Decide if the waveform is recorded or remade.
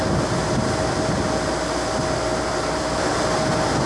recorded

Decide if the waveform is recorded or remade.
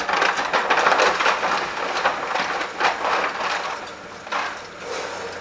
recorded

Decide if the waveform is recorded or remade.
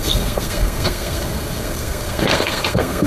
remade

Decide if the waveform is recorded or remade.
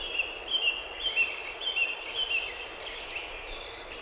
recorded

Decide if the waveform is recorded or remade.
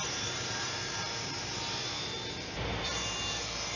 remade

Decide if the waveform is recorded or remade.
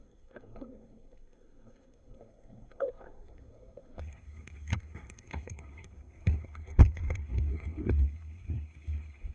remade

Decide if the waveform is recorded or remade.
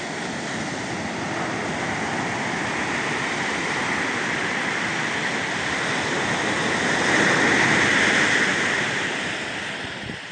recorded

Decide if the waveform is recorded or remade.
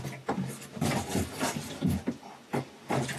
recorded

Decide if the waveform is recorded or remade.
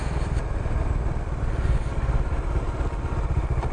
remade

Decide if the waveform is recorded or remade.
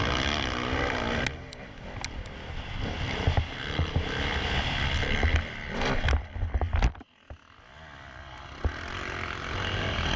recorded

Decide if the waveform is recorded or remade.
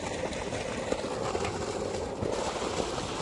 recorded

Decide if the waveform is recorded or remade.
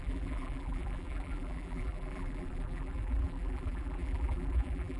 remade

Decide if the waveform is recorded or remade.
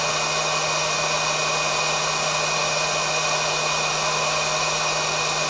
recorded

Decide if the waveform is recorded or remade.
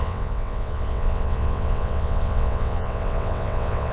remade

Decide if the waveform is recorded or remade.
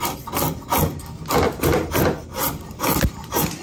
recorded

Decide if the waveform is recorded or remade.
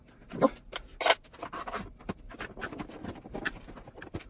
recorded